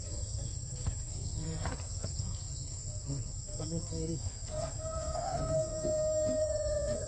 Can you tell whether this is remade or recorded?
remade